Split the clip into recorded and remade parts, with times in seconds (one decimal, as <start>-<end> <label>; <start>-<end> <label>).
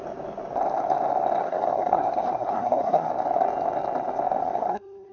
0.0-1.4 recorded; 1.4-3.1 remade; 3.1-4.4 recorded; 4.4-5.1 remade